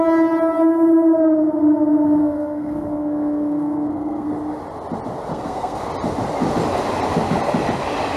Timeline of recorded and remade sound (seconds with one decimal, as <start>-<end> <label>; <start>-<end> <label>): 0.0-2.2 recorded; 2.2-4.3 remade; 4.3-5.3 recorded; 5.3-5.9 remade; 5.9-8.2 recorded